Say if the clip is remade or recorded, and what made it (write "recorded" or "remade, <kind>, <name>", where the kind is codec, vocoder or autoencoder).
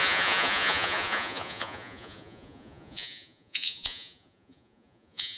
remade, vocoder, Vocos